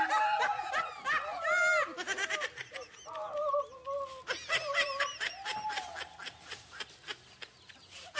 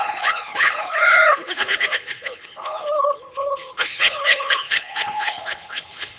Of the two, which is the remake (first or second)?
second